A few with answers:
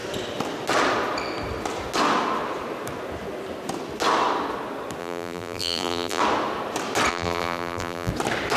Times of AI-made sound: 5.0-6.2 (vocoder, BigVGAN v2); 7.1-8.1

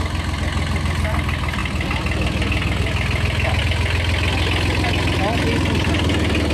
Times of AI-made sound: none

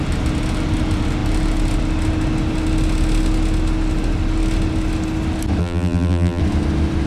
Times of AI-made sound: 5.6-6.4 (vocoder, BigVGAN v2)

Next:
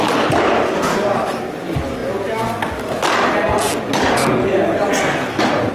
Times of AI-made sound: none